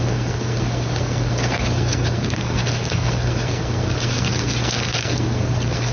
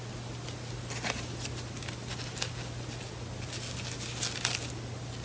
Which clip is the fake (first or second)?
first